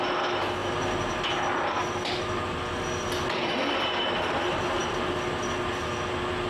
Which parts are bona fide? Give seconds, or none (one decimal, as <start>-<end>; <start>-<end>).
0.0-6.5